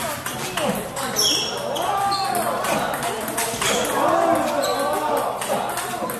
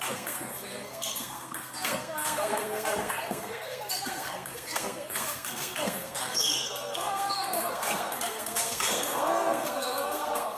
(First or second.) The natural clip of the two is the first